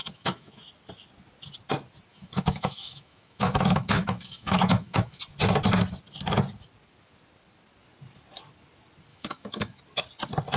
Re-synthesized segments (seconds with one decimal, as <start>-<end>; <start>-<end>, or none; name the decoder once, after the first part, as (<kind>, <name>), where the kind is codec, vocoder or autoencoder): 0.0-0.6 (autoencoder, DAC-VAE); 2.1-5.2; 9.1-9.8